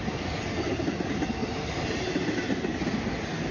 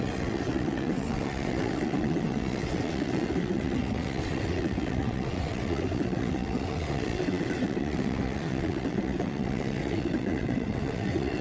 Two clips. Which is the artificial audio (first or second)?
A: second